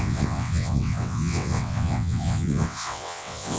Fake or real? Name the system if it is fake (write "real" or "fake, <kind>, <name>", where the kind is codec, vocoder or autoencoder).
fake, vocoder, WaveNeXt